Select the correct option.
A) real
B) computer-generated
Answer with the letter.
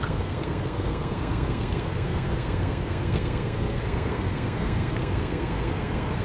B